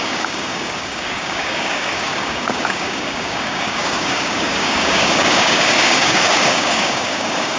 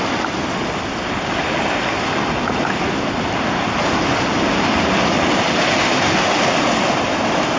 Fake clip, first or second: first